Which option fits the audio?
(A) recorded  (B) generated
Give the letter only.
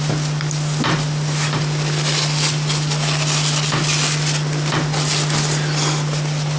A